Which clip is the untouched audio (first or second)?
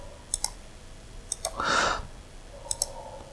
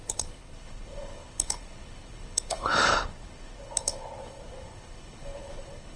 first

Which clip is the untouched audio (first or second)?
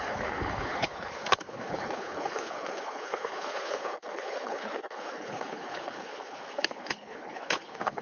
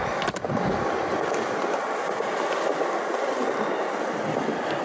second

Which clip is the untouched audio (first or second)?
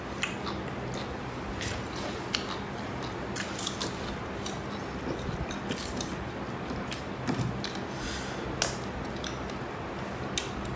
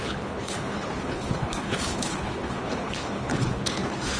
first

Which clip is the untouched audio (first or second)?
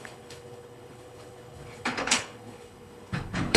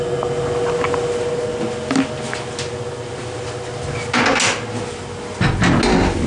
second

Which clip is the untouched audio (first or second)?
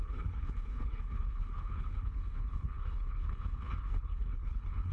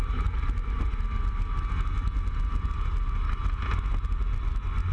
second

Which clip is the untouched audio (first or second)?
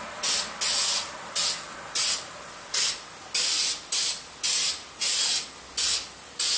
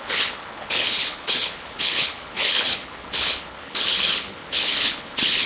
first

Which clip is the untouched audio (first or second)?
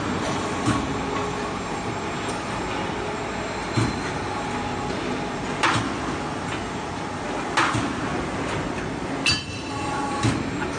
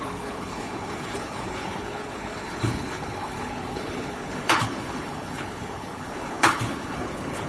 first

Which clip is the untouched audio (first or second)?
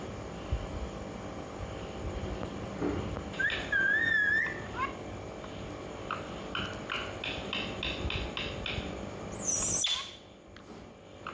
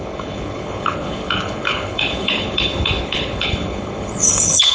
first